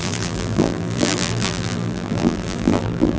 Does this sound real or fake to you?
fake